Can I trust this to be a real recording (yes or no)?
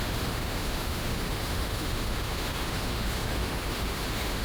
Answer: no